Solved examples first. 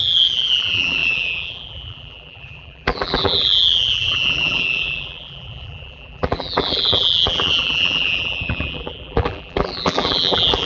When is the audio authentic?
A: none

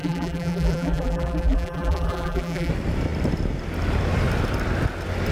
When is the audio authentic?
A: 2.7-5.3

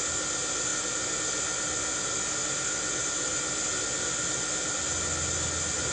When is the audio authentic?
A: 0.0-5.9

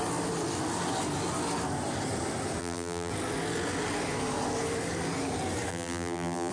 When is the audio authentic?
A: 0.0-2.6; 3.1-5.7

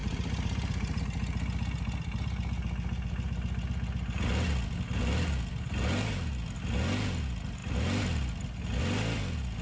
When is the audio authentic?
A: 1.0-9.6

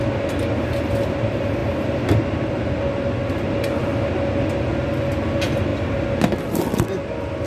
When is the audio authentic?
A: 0.0-7.5

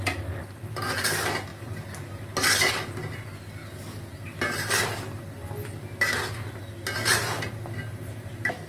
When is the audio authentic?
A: 0.0-8.7

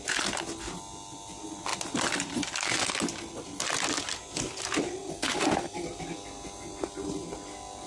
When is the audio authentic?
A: 0.0-1.7; 2.3-7.9